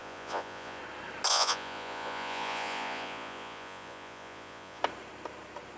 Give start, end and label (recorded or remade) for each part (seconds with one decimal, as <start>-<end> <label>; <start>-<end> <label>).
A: 0.0-0.8 remade; 0.8-1.3 recorded; 1.3-4.8 remade; 4.8-5.8 recorded